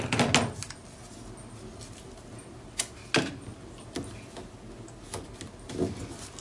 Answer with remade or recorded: recorded